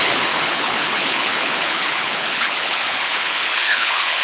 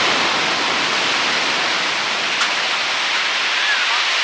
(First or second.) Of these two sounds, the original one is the second